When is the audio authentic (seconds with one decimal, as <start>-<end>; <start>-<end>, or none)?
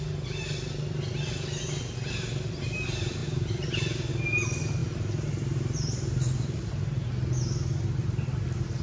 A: 0.0-3.2; 4.1-4.8; 7.1-8.8